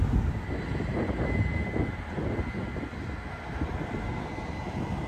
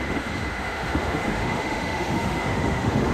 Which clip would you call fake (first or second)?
second